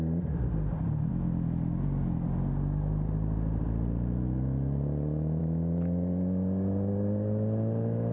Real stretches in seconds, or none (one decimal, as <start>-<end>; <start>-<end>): 0.0-8.1